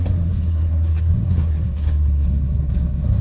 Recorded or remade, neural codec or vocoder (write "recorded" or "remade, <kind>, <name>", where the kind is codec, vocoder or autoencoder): remade, codec, SNAC